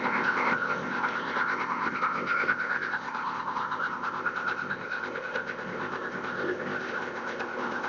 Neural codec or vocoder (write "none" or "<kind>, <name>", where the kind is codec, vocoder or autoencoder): codec, ZipCodec